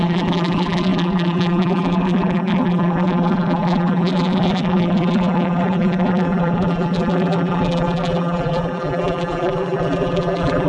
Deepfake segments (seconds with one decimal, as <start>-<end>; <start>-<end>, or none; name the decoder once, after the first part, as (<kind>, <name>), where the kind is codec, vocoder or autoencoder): 0.0-10.7 (vocoder, BigVGAN v2)